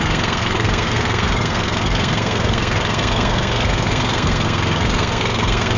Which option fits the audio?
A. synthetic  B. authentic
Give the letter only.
A